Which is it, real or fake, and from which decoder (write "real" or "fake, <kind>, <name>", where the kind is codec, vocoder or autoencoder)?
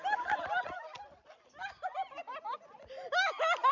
real